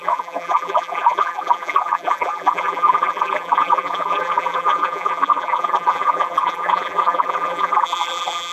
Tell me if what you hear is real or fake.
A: fake